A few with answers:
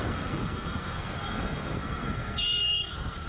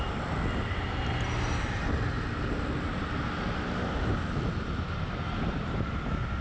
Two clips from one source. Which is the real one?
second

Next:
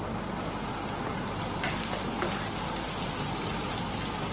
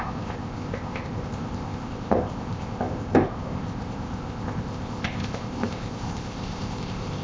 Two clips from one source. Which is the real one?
first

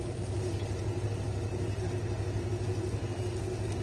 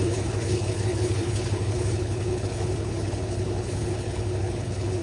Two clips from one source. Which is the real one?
first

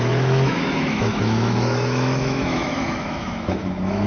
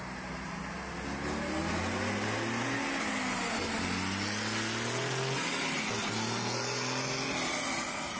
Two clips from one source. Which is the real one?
second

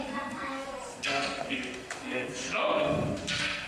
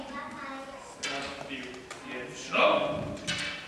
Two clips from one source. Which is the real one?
second